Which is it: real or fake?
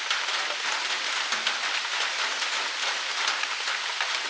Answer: real